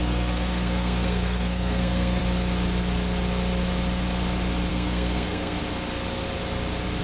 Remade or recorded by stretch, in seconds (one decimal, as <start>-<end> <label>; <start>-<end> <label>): 0.0-2.2 remade; 2.2-4.7 recorded; 4.7-5.6 remade; 5.6-7.0 recorded